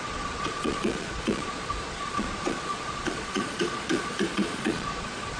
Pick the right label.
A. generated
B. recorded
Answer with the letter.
A